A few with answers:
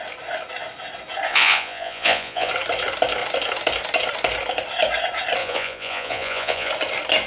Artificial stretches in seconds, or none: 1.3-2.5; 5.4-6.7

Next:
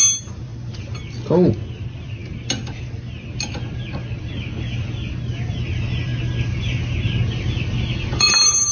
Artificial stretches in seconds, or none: none

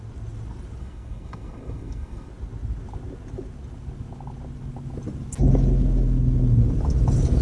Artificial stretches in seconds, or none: 0.8-2.3

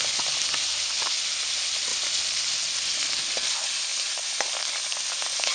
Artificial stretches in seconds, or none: none

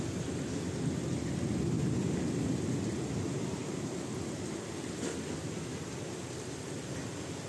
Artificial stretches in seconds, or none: none

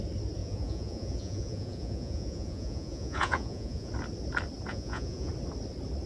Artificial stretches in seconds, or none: 0.4-3.9; 4.7-5.3